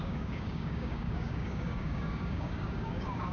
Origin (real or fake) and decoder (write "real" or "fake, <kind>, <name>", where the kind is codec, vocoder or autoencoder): fake, codec, DAC